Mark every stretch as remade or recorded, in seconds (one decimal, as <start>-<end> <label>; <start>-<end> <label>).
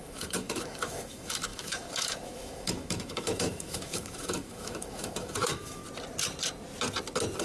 0.0-5.8 remade; 5.8-7.4 recorded